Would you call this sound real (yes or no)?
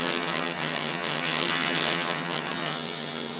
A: no